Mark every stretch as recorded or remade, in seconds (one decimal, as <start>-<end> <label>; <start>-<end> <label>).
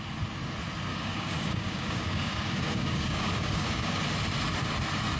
0.0-0.9 recorded; 0.9-4.0 remade; 4.0-5.2 recorded